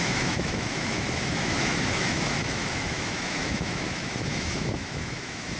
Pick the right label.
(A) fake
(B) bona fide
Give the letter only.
A